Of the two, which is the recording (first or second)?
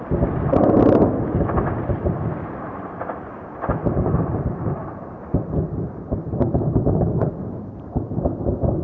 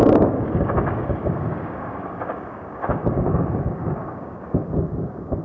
first